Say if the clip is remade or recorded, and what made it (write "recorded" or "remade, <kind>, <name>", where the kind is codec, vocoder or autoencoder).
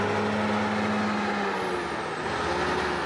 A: recorded